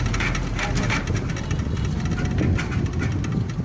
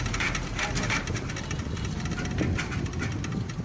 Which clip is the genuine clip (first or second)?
first